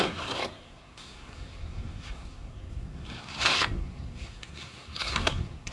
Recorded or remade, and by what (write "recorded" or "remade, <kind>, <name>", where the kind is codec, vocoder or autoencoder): remade, codec, SNAC